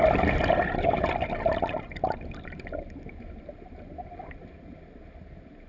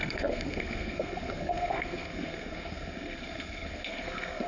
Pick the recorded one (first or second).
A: first